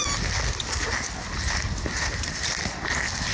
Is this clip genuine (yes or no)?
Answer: yes